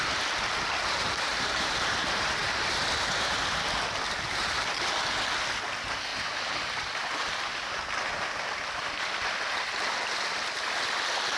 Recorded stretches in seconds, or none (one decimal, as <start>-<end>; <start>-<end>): 0.0-1.3; 2.4-6.1; 7.8-11.4